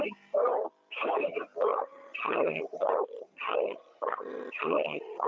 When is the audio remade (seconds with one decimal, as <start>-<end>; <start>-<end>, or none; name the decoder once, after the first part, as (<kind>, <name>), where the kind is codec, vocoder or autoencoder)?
1.7-5.3 (vocoder, HiFi-GAN)